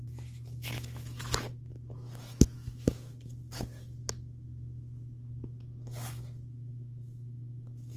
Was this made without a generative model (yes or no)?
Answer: no